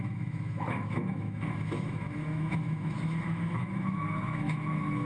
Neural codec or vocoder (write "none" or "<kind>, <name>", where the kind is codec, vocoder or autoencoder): autoencoder, DAC-VAE